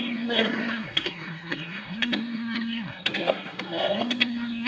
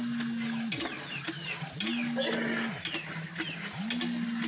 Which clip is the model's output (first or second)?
first